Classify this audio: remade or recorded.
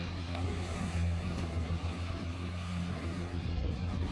remade